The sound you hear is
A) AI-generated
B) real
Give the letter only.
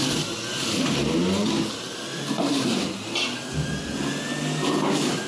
B